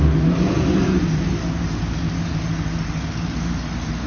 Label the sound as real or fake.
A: real